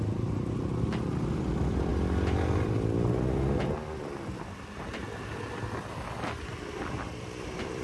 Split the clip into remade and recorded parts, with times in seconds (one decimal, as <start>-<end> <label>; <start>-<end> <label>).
0.0-1.9 remade; 1.9-6.5 recorded; 6.5-7.8 remade